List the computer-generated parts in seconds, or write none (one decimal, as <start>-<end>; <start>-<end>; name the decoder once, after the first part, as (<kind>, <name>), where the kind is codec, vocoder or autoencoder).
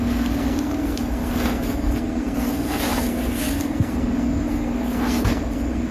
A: 0.0-5.9 (codec, SNAC)